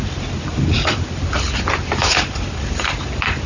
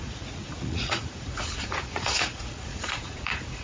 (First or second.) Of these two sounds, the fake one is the second